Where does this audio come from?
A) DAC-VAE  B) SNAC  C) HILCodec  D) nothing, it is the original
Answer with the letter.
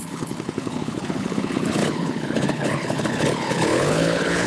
C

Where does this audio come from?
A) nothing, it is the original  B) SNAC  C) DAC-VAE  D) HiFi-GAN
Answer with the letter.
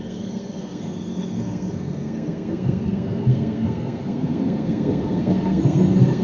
B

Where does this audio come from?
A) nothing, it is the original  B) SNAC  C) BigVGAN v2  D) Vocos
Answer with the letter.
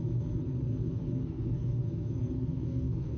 B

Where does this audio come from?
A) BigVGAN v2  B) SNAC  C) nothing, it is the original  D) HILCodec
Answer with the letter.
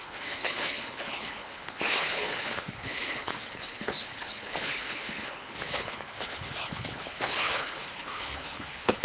D